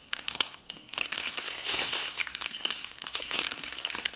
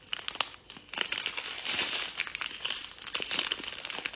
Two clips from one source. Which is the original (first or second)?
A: second